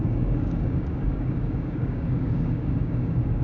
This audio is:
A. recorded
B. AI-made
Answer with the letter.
B